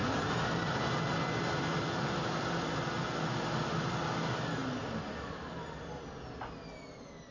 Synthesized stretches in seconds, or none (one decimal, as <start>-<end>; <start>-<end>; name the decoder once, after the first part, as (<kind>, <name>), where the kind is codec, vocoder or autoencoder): none

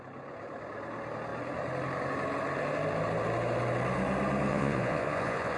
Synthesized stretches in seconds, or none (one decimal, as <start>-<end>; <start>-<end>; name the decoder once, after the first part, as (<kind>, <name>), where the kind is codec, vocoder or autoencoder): 4.5-5.6 (vocoder, Vocos)

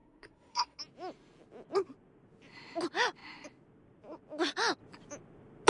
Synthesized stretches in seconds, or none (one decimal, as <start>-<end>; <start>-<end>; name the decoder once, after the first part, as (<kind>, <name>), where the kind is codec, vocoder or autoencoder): 0.0-0.8 (codec, SNAC)

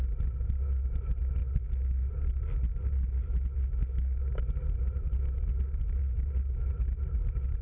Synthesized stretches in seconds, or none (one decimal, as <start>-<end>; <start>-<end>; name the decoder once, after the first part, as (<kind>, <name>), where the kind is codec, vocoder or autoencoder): none

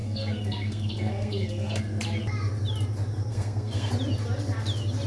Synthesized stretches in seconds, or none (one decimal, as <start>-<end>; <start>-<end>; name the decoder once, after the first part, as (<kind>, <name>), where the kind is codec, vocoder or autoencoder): 0.0-1.8 (codec, SNAC); 3.3-3.9

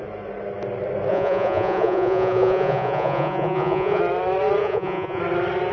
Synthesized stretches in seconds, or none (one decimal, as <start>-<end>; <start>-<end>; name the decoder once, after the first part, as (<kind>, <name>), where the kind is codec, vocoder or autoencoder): 1.1-4.0 (vocoder, Vocos); 4.6-5.2

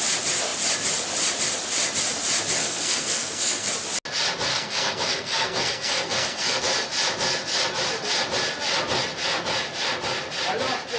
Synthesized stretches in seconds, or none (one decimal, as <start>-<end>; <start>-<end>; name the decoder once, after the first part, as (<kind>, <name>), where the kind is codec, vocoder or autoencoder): 2.6-3.7 (codec, SNAC); 4.5-6.6

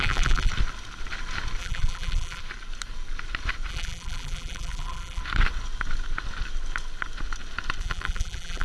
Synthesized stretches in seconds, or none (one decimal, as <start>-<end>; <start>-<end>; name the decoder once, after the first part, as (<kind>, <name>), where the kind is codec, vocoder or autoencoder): 0.0-0.5 (vocoder, BigVGAN v2); 1.6-2.4; 3.7-5.2; 7.8-8.6